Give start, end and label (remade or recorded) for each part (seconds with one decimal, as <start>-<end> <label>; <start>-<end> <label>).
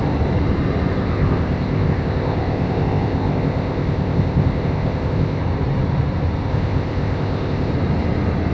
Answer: 0.0-1.0 recorded; 1.0-5.4 remade; 5.4-6.5 recorded; 6.5-7.7 remade; 7.7-8.5 recorded